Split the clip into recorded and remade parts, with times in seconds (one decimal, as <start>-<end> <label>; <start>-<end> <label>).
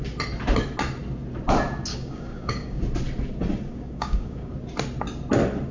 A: 0.0-1.9 recorded; 1.9-2.8 remade; 2.8-3.7 recorded; 3.7-4.5 remade; 4.5-5.7 recorded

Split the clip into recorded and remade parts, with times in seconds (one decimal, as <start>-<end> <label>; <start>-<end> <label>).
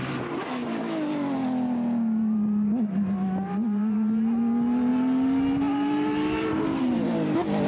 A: 0.0-7.7 recorded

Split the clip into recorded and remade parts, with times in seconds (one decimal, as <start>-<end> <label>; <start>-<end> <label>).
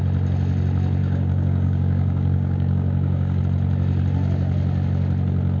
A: 0.0-1.0 recorded; 1.0-3.4 remade; 3.4-5.6 recorded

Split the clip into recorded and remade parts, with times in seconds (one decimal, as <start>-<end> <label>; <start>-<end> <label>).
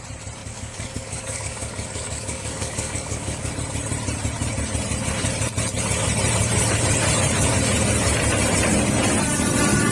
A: 0.0-0.4 recorded; 0.4-3.5 remade; 3.5-9.9 recorded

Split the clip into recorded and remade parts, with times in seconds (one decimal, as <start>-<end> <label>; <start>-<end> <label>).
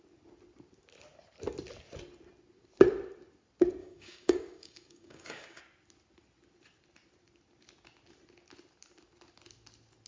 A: 0.0-3.8 recorded; 3.8-5.6 remade; 5.6-10.1 recorded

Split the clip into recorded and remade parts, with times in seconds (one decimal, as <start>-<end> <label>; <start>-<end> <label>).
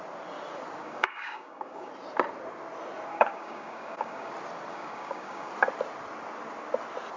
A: 0.0-0.8 recorded; 0.8-1.9 remade; 1.9-3.1 recorded; 3.1-4.3 remade; 4.3-4.7 recorded; 4.7-5.5 remade; 5.5-7.2 recorded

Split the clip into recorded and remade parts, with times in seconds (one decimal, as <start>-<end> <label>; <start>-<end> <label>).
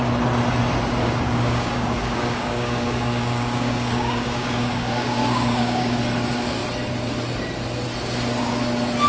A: 0.0-1.0 recorded; 1.0-6.0 remade; 6.0-9.1 recorded